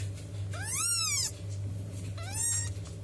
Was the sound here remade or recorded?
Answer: recorded